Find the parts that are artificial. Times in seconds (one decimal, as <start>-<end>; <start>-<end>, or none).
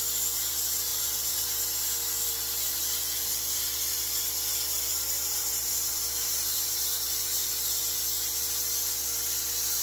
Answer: 0.9-1.6; 5.3-7.8